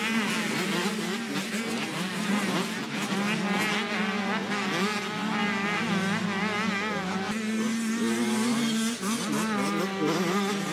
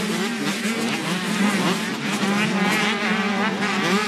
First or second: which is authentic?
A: first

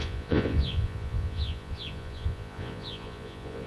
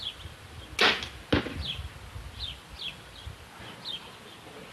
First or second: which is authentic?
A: second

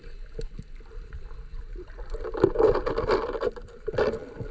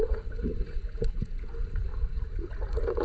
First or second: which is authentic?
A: first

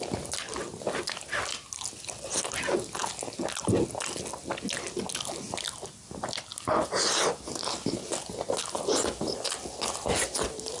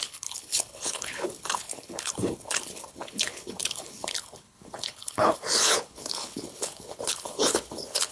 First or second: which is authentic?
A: first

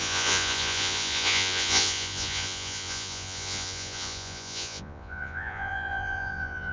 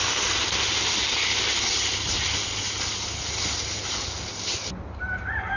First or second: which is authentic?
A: second